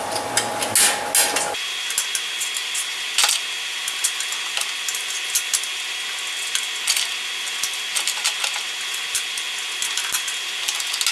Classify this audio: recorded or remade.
recorded